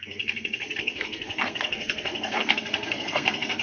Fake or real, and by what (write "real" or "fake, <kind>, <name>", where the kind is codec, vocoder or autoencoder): fake, codec, SNAC